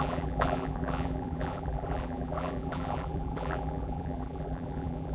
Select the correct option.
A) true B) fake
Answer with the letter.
B